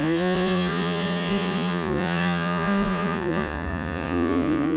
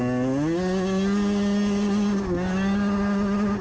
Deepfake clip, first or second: first